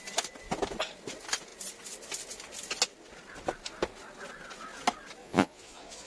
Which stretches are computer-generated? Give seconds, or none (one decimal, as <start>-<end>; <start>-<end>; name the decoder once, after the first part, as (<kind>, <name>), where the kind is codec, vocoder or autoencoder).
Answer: 5.2-6.1 (vocoder, Vocos)